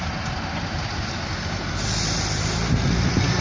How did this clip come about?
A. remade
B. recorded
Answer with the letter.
B